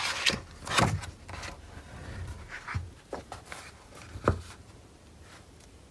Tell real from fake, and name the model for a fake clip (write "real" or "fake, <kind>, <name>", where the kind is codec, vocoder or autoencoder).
real